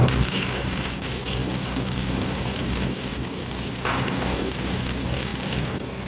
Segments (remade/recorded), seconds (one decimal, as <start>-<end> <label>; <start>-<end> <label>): 0.0-6.1 remade